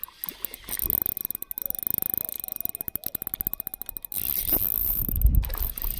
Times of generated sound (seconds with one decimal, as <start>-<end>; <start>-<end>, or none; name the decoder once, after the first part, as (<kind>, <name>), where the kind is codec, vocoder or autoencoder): 4.8-6.0 (vocoder, BigVGAN v2)